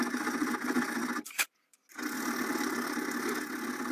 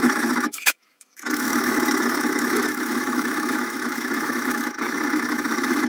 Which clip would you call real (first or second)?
first